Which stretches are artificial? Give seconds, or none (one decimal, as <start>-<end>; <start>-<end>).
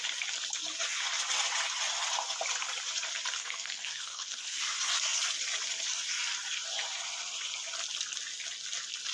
3.4-4.6